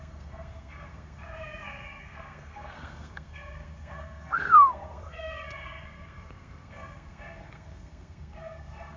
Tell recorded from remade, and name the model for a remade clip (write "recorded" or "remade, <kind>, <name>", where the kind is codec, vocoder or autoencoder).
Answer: remade, codec, SNAC